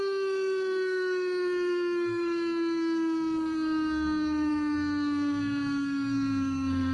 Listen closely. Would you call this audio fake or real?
fake